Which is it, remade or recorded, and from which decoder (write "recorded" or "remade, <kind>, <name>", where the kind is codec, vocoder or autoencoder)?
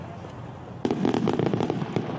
recorded